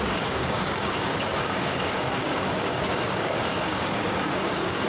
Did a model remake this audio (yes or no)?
yes